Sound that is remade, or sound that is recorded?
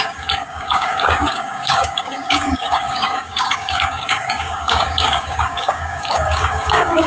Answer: remade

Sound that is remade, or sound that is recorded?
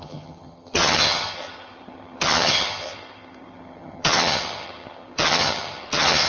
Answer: remade